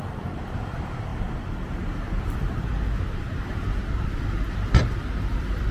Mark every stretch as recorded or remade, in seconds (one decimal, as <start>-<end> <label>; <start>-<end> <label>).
0.0-1.1 remade; 1.1-1.7 recorded; 1.7-2.7 remade; 2.7-4.8 recorded; 4.8-5.7 remade